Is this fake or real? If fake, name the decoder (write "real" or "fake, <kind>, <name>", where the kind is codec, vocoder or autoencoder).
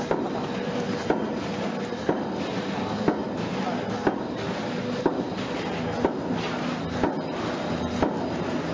real